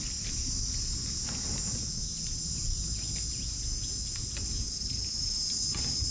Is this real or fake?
real